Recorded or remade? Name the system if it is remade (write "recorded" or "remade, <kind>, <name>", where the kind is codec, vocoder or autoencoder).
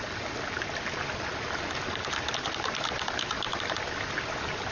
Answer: recorded